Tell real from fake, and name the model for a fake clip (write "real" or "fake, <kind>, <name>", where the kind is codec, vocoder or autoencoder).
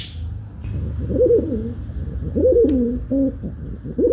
real